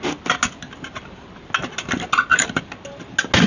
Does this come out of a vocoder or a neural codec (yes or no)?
no